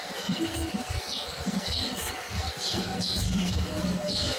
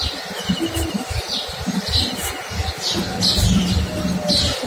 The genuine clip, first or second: second